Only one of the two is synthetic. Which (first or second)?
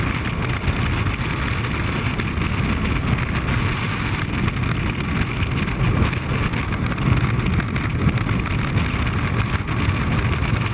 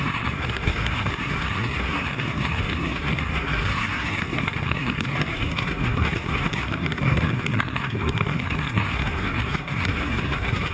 second